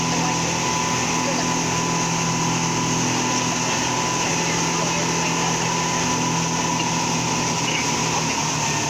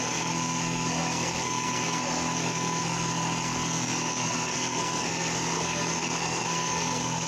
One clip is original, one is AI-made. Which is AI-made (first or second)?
second